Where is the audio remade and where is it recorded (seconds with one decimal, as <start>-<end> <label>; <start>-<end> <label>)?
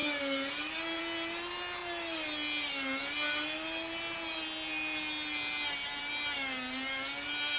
0.0-7.6 recorded